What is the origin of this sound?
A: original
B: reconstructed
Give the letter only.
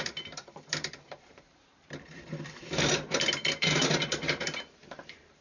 B